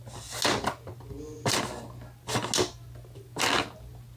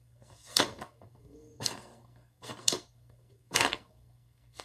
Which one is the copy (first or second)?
second